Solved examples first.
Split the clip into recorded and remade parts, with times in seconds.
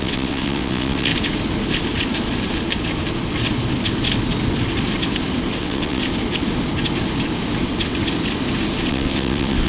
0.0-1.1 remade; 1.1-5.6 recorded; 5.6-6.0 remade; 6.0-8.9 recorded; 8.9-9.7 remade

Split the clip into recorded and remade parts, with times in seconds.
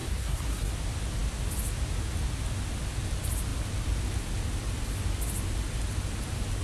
0.0-0.7 remade; 0.7-6.6 recorded